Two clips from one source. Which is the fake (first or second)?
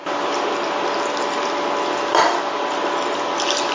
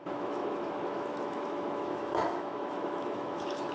second